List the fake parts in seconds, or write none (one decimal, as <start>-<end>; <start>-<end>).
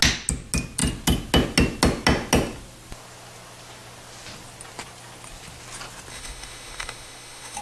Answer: 6.1-7.6